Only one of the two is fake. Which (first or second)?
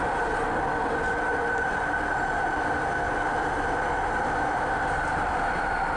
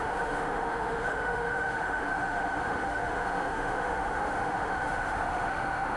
second